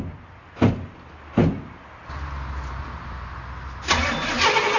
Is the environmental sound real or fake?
real